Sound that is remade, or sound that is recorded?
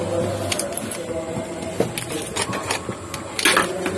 recorded